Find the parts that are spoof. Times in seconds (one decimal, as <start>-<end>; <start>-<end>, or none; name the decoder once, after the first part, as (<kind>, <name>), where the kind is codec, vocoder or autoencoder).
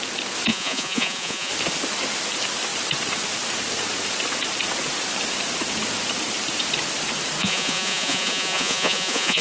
0.5-1.5 (vocoder, Vocos); 7.4-9.4